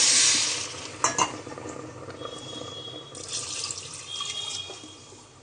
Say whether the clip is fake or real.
real